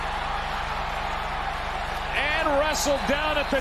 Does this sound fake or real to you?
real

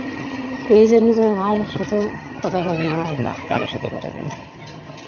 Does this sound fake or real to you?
fake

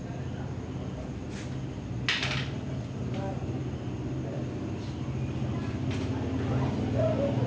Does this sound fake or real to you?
real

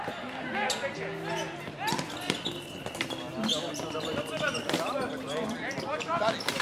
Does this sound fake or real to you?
real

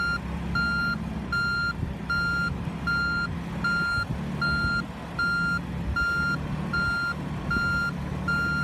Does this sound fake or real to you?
real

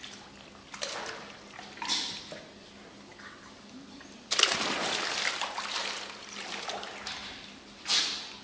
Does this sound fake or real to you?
real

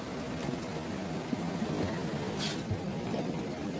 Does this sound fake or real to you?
real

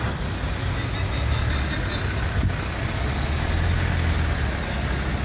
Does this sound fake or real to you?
real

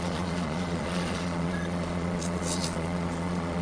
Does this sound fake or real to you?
fake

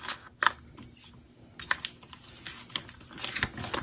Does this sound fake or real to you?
real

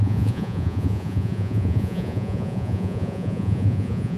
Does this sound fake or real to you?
fake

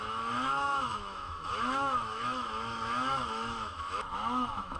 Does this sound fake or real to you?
fake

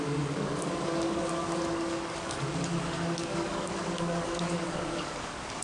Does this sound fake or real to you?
fake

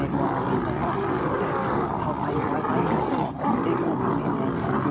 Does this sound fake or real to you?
real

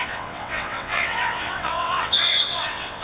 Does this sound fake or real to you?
fake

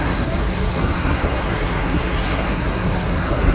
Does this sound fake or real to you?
fake